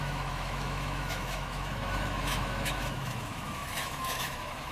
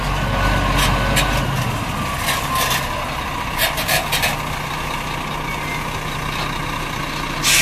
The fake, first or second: first